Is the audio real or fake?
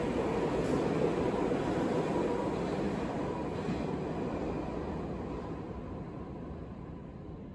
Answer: real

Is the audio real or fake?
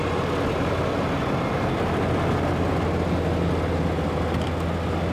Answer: real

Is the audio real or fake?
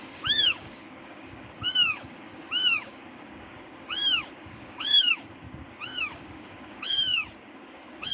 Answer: fake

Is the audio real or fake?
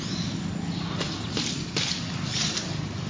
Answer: real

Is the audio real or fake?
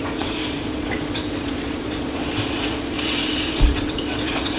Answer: fake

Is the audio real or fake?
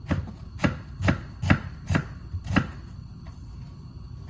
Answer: real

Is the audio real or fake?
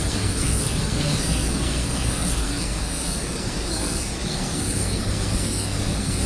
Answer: fake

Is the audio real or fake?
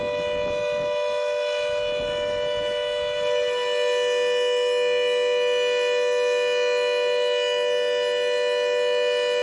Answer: real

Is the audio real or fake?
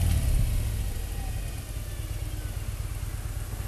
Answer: real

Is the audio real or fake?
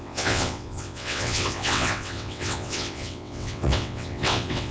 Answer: fake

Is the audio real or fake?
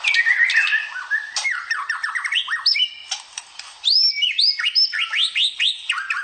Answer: real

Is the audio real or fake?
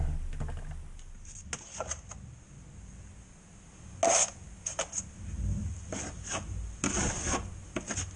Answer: real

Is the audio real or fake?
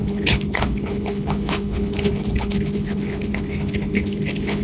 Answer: fake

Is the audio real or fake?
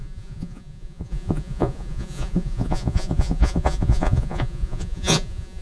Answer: fake